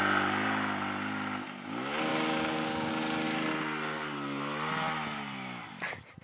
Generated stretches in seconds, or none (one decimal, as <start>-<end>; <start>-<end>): 2.1-2.9